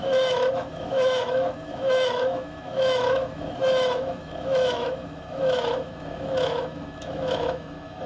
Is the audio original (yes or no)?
no